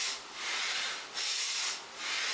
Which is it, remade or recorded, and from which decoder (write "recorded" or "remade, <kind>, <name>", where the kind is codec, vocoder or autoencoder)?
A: recorded